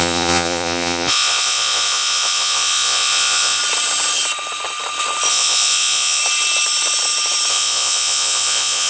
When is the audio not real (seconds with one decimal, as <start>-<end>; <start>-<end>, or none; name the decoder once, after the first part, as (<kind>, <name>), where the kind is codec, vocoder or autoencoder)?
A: 0.0-3.6 (vocoder, Vocos); 5.3-6.2; 7.5-8.9